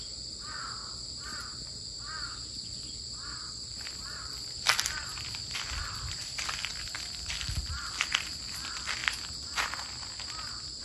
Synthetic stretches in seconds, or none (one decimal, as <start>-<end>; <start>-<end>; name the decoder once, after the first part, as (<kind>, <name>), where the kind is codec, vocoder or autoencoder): 0.0-5.1 (vocoder, BigVGAN v2); 5.8-6.7; 7.4-9.0